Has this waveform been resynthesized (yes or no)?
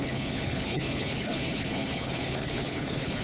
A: yes